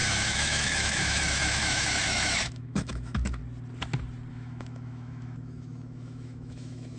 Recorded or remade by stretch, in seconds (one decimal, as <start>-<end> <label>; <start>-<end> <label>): 0.0-3.4 remade; 3.4-4.3 recorded; 4.3-7.0 remade